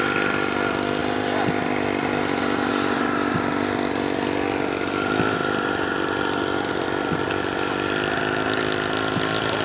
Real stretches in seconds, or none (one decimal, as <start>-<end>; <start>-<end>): 0.0-9.6

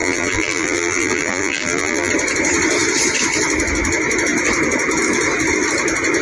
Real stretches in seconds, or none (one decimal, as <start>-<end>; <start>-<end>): 2.1-6.2

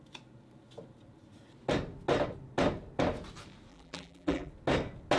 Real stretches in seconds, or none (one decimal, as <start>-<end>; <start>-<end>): 0.0-3.7; 4.5-5.2

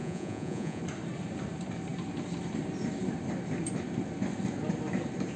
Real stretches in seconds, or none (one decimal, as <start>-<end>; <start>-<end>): 0.8-5.4

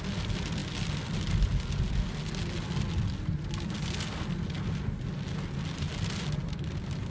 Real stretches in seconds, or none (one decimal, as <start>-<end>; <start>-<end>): 0.0-7.1